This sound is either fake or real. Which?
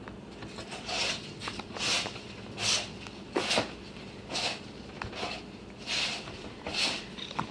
real